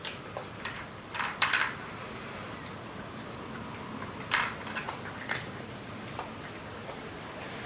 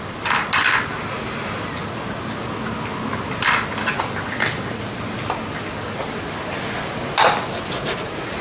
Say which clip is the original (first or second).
second